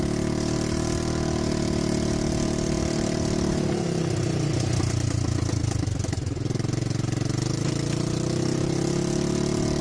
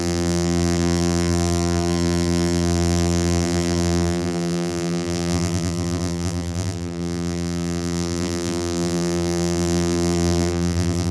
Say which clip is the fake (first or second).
second